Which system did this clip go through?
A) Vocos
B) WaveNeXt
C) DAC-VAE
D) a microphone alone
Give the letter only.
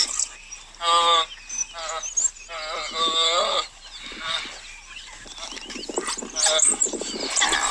D